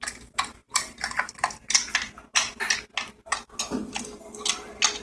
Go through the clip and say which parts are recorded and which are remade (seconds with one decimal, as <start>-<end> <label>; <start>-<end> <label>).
0.0-5.0 recorded